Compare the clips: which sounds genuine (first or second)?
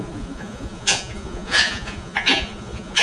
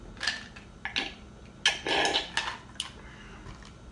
second